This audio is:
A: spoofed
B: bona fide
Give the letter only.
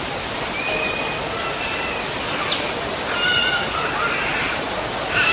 B